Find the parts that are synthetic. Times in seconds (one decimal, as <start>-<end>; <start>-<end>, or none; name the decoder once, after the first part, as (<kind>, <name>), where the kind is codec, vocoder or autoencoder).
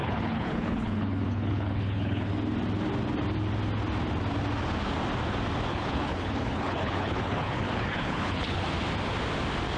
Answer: 0.0-2.3 (codec, HILCodec); 5.7-8.6